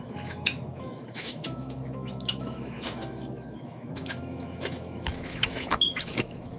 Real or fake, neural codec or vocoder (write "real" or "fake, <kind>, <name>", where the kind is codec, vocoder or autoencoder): fake, autoencoder, DAC-VAE